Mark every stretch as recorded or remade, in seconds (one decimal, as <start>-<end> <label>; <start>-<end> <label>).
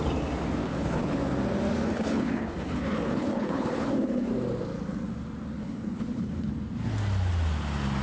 0.0-0.6 recorded; 0.6-1.2 remade; 1.2-1.8 recorded; 1.8-4.3 remade; 4.3-5.6 recorded; 5.6-6.5 remade; 6.5-8.0 recorded